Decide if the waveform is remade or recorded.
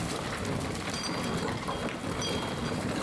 recorded